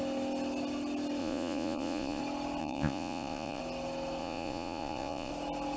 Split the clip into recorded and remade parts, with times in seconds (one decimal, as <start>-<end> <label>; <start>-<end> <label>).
0.0-1.2 recorded; 1.2-2.2 remade; 2.2-2.6 recorded; 2.6-3.6 remade; 3.6-4.2 recorded; 4.2-5.3 remade; 5.3-5.8 recorded